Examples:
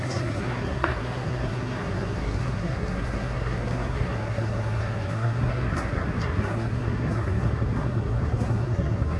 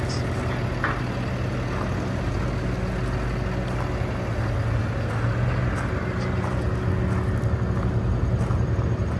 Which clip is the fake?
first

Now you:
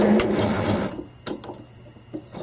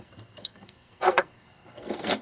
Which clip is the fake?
second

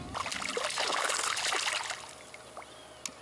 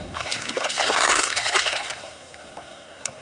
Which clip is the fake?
second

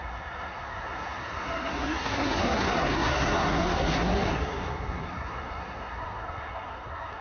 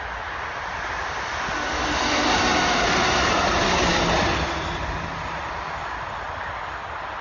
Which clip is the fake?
first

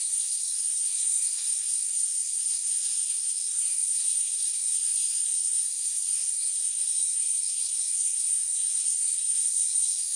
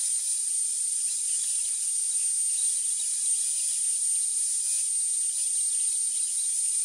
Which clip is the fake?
first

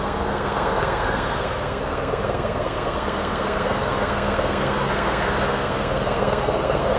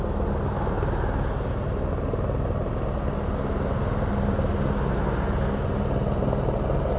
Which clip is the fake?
first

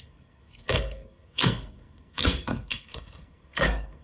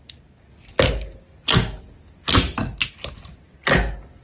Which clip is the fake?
first